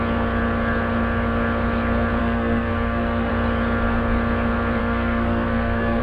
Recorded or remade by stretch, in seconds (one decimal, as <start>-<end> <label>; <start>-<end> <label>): 0.0-2.2 recorded; 2.2-3.3 remade; 3.3-4.8 recorded; 4.8-6.0 remade